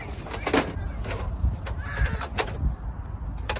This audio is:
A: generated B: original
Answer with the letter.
B